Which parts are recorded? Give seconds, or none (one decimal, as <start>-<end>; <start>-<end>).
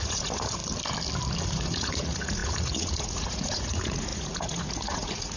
0.6-1.4